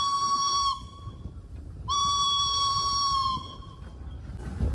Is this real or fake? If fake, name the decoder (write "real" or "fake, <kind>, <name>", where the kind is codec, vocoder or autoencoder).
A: fake, vocoder, BigVGAN v2